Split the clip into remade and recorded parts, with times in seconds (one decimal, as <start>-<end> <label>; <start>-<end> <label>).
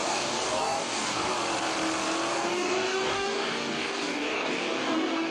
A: 0.0-1.3 remade; 1.3-2.3 recorded; 2.3-5.3 remade